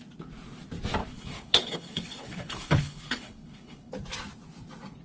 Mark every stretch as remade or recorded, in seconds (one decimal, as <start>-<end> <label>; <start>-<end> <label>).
0.0-1.0 recorded; 1.0-3.9 remade; 3.9-5.0 recorded